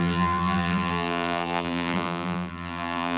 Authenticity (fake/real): fake